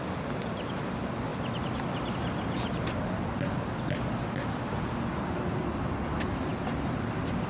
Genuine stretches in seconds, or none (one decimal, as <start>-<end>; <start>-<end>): 0.0-7.5